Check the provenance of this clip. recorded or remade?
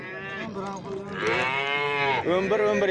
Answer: remade